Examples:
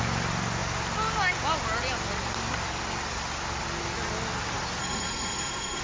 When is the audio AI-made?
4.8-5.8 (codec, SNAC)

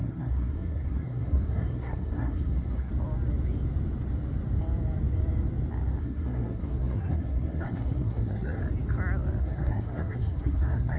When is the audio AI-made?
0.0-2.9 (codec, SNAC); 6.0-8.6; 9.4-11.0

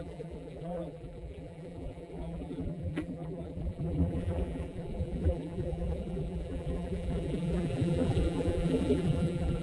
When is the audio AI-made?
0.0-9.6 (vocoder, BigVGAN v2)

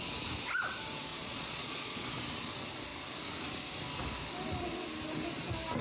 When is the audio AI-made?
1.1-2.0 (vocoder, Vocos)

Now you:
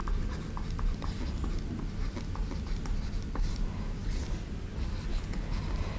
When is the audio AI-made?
5.1-5.6 (codec, HILCodec)